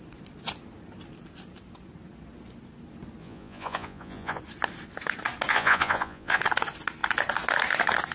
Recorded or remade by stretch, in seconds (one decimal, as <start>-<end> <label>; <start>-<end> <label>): 0.0-3.2 recorded; 3.2-4.4 remade; 4.4-5.5 recorded; 5.5-6.4 remade; 6.4-8.1 recorded